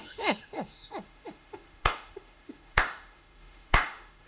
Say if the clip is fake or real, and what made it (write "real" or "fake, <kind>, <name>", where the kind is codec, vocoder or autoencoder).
fake, autoencoder, DAC-VAE